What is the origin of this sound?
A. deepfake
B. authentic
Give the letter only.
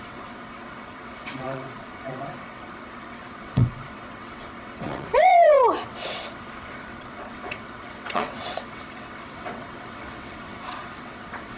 A